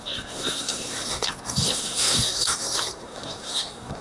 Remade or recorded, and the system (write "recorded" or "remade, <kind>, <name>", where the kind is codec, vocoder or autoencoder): remade, codec, SNAC